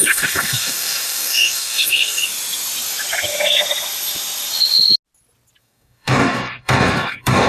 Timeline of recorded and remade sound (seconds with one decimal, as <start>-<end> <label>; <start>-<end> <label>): 0.0-2.2 remade; 2.2-5.6 recorded; 5.6-7.5 remade

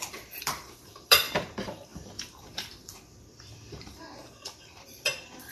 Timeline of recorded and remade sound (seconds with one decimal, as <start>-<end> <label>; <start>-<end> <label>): 0.0-5.5 remade